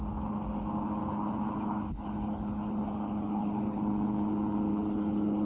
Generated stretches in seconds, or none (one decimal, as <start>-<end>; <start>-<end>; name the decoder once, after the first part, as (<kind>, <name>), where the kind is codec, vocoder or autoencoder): 1.0-4.3 (codec, HILCodec); 4.7-5.5